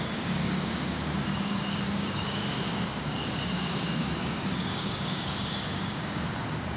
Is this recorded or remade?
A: remade